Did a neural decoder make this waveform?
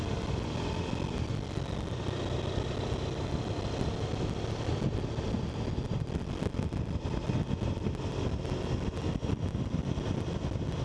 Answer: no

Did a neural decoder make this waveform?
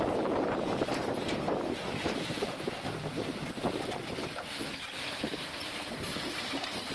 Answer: yes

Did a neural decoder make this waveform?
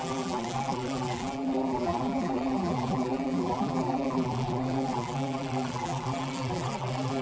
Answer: yes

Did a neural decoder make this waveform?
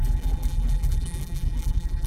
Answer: yes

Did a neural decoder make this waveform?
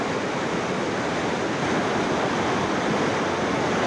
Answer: no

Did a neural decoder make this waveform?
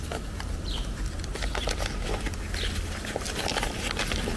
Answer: no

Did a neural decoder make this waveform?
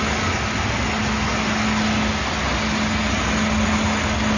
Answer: no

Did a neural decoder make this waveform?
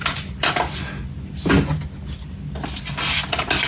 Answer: no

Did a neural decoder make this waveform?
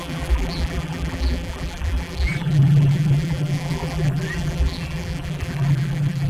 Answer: yes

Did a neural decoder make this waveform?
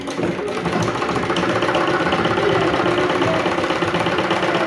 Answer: no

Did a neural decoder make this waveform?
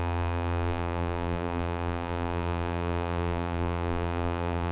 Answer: yes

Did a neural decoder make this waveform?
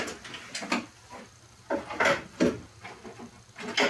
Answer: no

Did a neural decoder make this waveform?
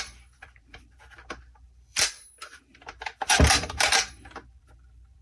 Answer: yes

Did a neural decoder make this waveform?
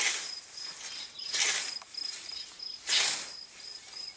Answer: no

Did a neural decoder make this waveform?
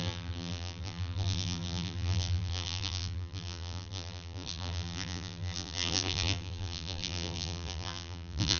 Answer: yes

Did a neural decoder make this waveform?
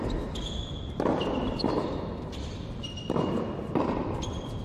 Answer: no